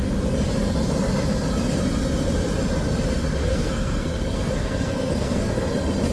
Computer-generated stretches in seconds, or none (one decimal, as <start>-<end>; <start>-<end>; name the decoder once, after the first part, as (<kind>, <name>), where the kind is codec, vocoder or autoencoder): 3.3-5.5 (codec, SNAC)